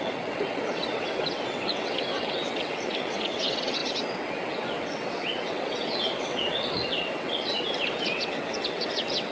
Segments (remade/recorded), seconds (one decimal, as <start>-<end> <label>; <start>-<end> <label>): 0.0-9.3 remade